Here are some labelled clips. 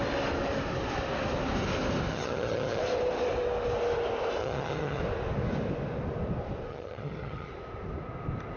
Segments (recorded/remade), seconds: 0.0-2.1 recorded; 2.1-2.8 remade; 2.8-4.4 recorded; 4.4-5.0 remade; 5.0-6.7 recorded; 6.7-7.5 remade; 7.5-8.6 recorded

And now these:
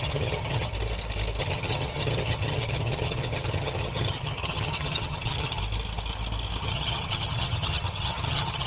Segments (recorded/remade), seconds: 0.0-0.7 remade; 0.7-1.4 recorded; 1.4-5.6 remade; 5.6-6.6 recorded; 6.6-8.7 remade

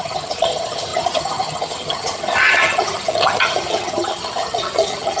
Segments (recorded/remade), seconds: 0.0-5.2 remade